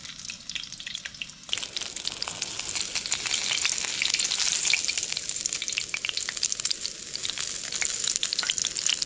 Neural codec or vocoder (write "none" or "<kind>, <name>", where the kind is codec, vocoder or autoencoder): none